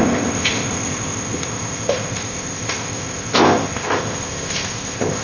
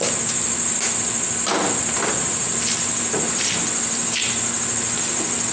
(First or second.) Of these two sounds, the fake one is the first